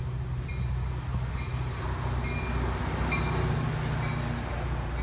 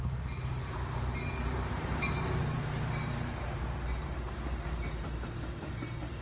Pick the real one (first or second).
first